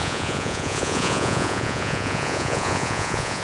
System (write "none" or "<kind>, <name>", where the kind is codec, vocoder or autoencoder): vocoder, Vocos